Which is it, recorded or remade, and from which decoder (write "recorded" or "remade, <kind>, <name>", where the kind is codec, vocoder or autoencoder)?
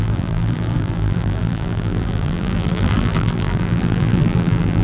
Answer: remade, vocoder, BigVGAN v2